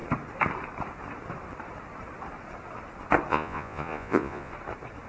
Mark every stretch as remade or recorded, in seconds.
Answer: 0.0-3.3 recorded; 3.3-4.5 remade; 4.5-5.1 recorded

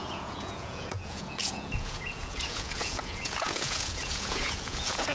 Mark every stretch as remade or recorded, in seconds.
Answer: 0.0-5.1 remade

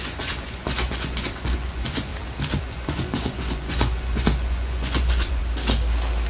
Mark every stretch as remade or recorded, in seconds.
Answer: 0.0-2.1 remade; 2.1-2.6 recorded; 2.6-5.4 remade; 5.4-6.3 recorded

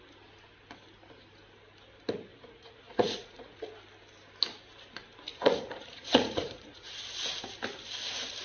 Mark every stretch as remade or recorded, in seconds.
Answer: 0.0-2.3 recorded; 2.3-3.6 remade; 3.6-5.3 recorded; 5.3-7.0 remade; 7.0-8.4 recorded

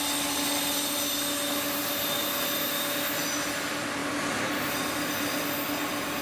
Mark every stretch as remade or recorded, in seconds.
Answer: 0.0-6.2 recorded